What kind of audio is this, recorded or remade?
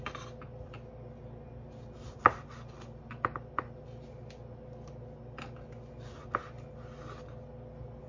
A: recorded